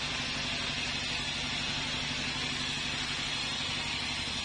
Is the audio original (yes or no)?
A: yes